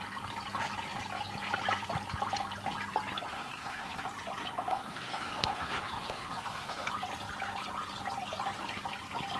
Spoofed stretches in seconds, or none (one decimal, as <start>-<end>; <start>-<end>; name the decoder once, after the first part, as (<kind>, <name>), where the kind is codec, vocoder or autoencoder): 3.3-4.0 (codec, SNAC); 4.7-6.9